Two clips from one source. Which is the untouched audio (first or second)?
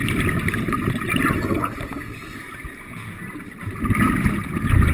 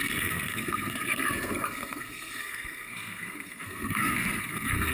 first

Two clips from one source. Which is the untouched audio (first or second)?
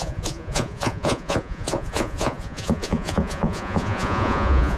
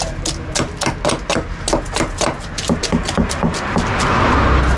second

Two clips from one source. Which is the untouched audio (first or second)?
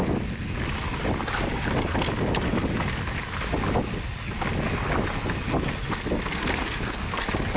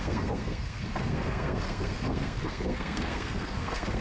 first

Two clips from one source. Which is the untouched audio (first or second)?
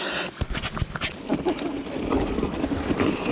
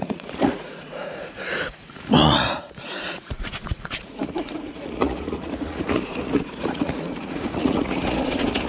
first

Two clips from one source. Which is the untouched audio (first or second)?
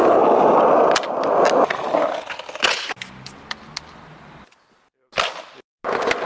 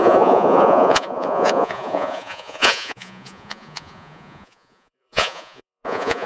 first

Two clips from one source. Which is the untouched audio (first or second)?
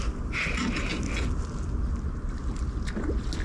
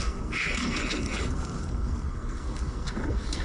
first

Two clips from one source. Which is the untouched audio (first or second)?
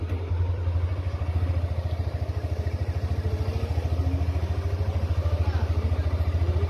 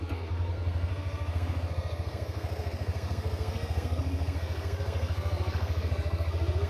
first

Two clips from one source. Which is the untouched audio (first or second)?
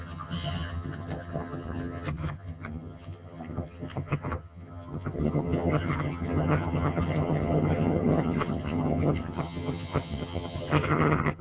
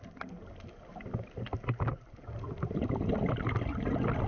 second